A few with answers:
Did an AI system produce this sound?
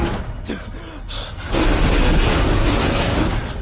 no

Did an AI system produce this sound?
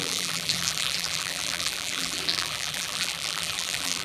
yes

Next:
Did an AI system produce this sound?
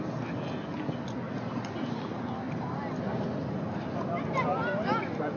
no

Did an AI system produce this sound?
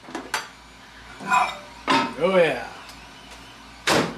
no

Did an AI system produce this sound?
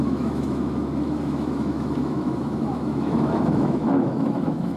yes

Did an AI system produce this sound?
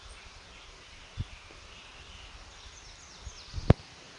no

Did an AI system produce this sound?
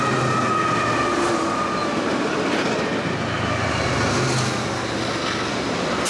no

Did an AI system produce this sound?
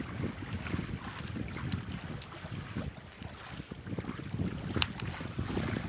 no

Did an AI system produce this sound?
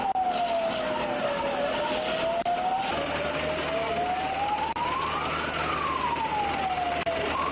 no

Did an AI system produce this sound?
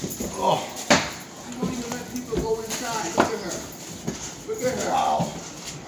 yes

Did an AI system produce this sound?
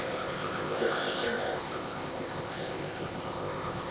yes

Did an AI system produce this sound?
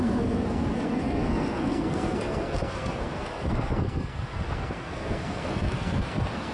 yes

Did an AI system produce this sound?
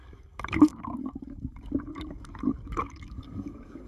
yes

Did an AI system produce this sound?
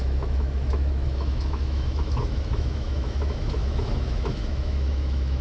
yes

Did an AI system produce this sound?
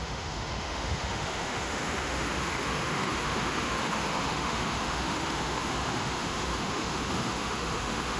yes